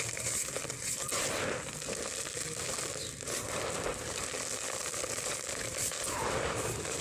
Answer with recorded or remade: recorded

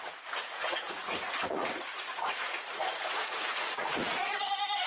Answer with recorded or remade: remade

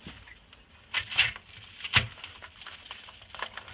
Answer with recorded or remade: recorded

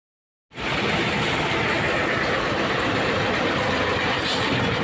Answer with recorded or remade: recorded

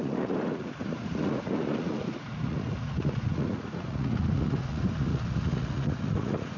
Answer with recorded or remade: remade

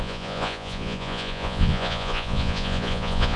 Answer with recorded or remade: remade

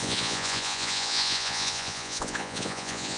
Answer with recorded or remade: remade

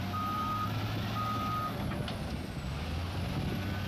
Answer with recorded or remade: recorded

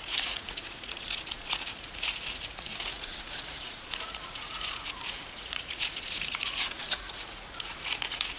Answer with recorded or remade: remade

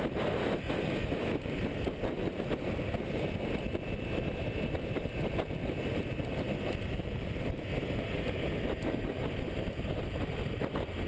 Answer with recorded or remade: recorded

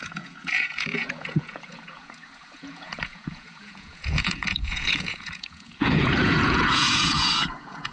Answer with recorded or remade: remade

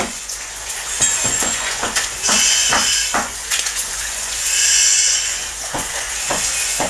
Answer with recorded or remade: remade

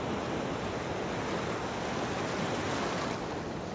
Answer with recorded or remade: recorded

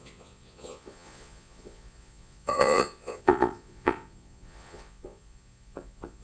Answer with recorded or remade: remade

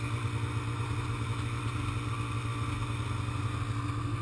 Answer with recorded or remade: recorded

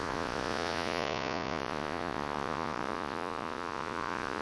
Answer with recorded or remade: remade